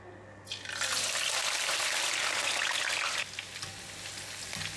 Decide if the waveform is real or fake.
real